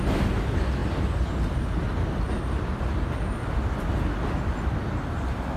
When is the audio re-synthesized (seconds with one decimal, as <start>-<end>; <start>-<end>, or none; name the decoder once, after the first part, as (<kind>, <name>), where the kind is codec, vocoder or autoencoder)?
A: none